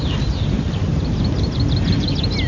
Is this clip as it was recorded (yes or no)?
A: yes